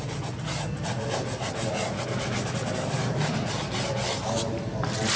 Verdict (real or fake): real